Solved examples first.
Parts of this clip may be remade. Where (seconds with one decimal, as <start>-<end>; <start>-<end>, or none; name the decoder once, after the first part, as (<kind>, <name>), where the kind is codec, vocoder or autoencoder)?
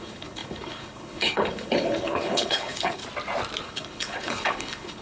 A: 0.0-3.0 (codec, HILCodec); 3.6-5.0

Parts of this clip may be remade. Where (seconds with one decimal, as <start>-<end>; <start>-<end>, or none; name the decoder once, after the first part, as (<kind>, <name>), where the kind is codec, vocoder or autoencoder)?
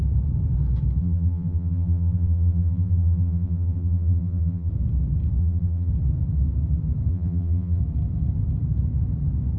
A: 1.0-4.7 (vocoder, BigVGAN v2); 5.4-5.9; 7.1-7.8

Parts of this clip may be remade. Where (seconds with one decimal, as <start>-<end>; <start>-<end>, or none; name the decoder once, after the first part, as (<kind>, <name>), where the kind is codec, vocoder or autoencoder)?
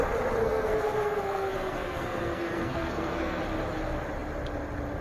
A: 0.4-3.4 (codec, SNAC)